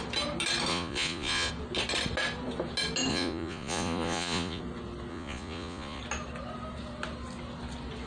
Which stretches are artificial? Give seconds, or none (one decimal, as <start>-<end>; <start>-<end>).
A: 0.7-1.5; 3.1-4.6; 5.1-6.0